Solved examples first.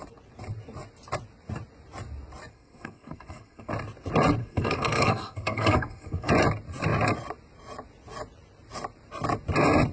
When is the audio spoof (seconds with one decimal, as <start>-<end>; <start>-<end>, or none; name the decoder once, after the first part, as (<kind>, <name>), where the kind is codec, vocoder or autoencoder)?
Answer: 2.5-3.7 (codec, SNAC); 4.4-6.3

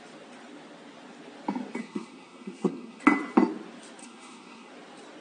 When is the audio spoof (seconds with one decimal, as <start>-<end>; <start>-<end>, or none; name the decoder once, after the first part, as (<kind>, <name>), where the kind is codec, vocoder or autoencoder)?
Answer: 1.8-3.0 (codec, SNAC); 4.0-4.7

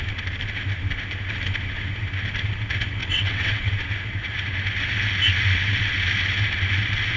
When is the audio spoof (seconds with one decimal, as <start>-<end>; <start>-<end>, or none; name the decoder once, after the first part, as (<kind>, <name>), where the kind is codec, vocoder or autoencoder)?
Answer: 3.0-3.7 (vocoder, WaveNeXt)

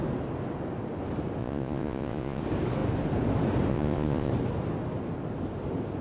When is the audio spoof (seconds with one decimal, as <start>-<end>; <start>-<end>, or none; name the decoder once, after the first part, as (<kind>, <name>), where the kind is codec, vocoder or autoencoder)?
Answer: 1.4-2.4 (vocoder, Vocos); 3.7-4.3

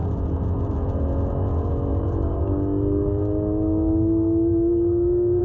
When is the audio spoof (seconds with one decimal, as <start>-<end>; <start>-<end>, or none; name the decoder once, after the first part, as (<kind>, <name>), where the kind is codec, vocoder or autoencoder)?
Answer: 1.9-5.4 (codec, DAC)